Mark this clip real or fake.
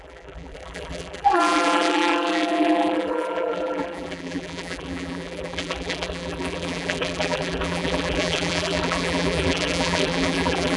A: fake